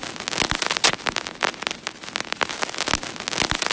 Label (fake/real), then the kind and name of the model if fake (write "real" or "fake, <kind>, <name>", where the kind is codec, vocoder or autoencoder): real